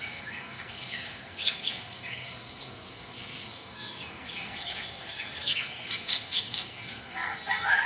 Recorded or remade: remade